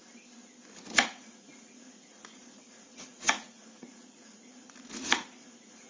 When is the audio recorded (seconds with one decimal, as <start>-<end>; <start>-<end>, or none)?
0.0-0.7